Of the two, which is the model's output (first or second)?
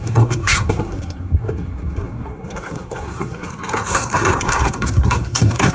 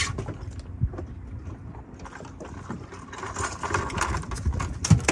first